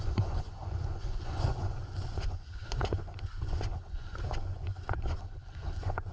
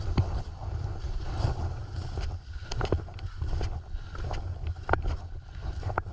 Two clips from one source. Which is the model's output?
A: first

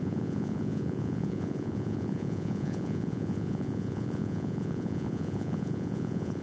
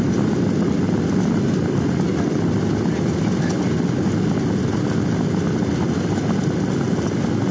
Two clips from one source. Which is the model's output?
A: first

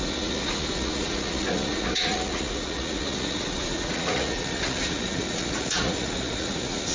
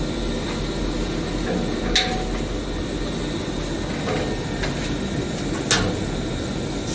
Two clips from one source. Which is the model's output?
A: first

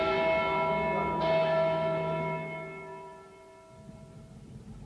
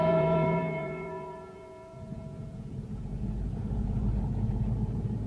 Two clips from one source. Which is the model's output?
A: second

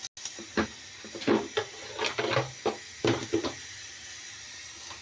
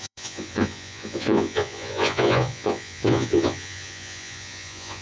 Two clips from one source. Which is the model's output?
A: second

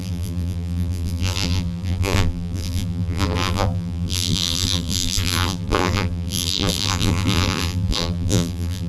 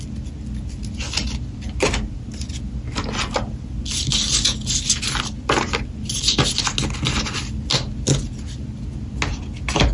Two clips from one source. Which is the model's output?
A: first